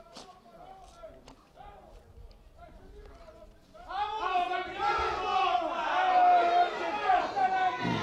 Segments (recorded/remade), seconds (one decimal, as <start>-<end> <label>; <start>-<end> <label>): 0.0-8.0 recorded